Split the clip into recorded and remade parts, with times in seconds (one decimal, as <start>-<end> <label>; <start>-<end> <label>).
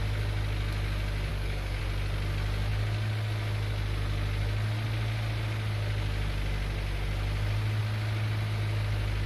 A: 0.0-1.3 recorded; 1.3-1.8 remade; 1.8-9.3 recorded